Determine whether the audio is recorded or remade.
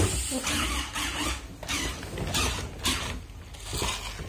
recorded